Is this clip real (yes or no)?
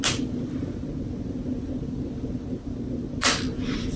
yes